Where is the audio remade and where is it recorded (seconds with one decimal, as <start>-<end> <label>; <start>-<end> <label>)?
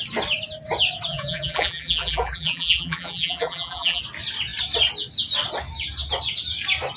0.0-1.1 recorded; 1.1-4.0 remade; 4.0-7.0 recorded